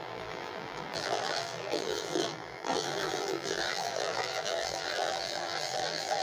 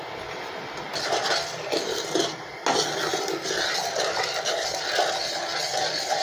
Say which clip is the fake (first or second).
first